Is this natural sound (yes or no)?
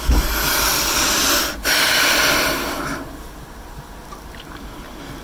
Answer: yes